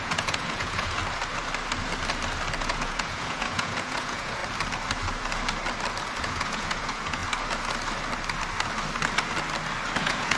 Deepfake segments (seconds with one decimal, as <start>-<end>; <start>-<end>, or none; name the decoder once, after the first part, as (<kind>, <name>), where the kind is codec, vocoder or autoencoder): 0.0-1.0 (vocoder, Vocos); 2.6-4.4; 6.2-7.2; 10.0-10.4